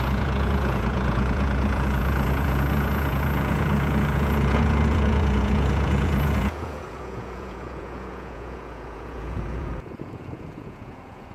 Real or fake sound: fake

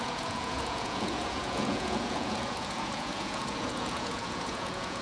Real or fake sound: fake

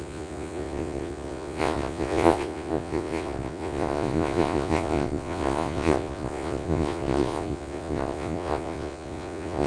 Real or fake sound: fake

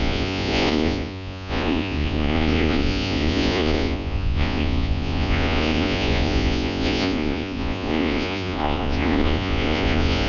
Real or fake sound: fake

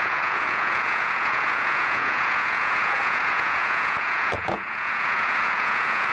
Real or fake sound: fake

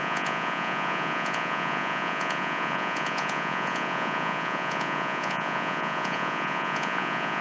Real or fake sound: fake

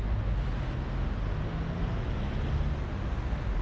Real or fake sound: real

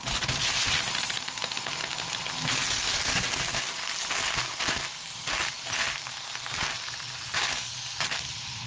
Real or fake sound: real